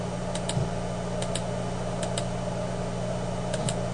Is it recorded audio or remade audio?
recorded